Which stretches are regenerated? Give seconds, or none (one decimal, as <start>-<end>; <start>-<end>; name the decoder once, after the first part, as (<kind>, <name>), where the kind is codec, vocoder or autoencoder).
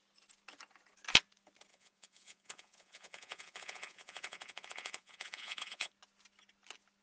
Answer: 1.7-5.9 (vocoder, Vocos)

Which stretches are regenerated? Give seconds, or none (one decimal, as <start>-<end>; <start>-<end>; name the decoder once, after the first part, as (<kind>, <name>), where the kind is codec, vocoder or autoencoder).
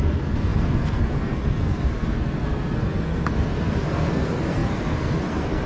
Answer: 0.0-5.7 (codec, SNAC)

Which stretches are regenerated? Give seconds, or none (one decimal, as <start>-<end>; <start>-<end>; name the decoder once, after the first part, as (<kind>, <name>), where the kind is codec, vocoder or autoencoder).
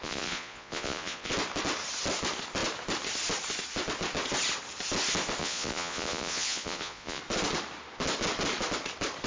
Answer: 0.0-1.3 (vocoder, Vocos); 5.4-7.2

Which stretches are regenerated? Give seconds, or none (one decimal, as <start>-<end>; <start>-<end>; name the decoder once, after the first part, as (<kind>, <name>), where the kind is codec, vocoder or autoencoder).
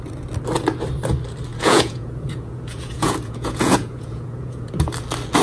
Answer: 1.5-4.7 (vocoder, Vocos)